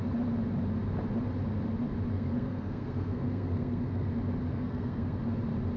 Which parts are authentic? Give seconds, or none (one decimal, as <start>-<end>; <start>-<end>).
0.0-2.1; 4.1-4.5; 5.2-5.8